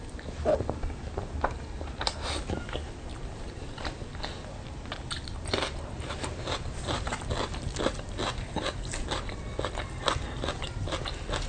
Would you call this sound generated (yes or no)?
no